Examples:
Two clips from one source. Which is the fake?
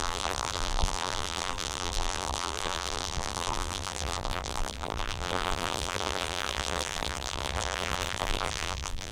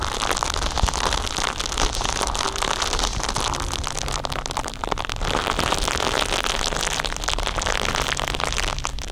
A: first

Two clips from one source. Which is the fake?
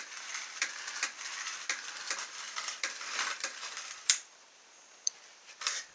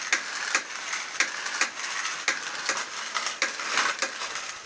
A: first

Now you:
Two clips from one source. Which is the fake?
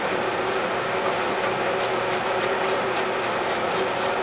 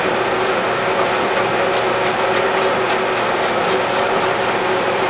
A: first